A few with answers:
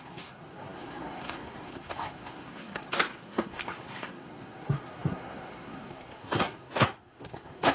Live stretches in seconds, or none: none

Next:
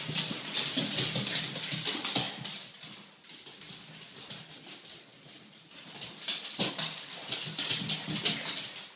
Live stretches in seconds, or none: 0.0-5.1; 7.5-9.0